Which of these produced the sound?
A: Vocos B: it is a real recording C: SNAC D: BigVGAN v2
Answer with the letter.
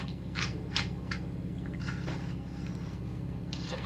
C